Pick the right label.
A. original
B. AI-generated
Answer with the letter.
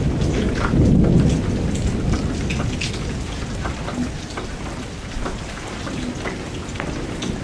A